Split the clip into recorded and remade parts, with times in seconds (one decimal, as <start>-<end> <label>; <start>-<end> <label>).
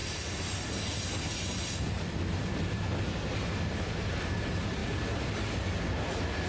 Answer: 0.0-4.8 recorded; 4.8-5.7 remade; 5.7-6.5 recorded